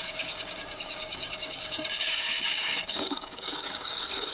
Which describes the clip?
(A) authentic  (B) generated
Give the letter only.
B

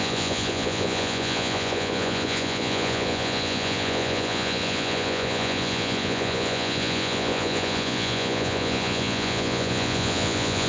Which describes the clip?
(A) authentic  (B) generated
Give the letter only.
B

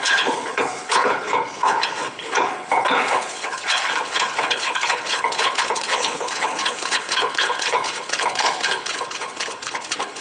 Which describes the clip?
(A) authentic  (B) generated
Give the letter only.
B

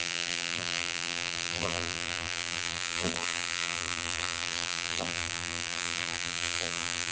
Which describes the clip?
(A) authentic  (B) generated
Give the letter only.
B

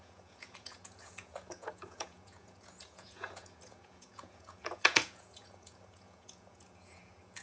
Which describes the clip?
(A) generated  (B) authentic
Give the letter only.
A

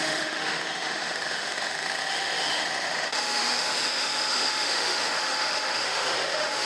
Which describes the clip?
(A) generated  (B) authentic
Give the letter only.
A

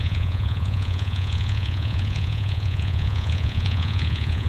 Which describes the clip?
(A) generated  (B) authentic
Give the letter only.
A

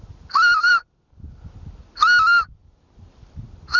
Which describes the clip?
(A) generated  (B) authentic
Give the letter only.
B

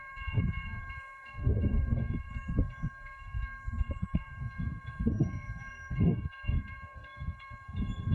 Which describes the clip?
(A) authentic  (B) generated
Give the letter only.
B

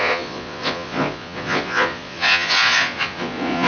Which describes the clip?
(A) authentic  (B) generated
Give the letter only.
B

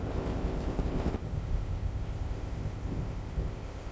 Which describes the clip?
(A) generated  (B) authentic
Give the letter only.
A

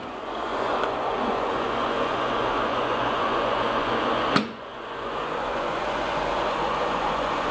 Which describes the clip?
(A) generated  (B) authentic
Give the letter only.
A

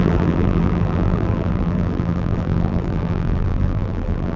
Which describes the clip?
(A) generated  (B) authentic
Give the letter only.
A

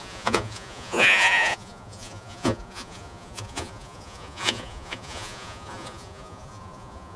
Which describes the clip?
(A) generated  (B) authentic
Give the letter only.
A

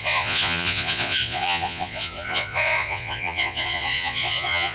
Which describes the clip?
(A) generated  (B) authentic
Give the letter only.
A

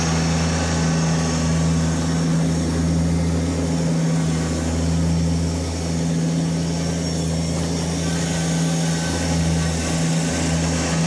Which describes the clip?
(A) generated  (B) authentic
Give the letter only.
B